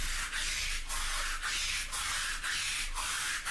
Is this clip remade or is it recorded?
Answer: recorded